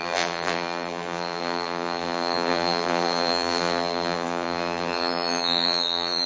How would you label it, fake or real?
fake